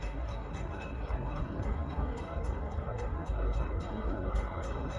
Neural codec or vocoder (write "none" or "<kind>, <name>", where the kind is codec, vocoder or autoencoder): codec, SNAC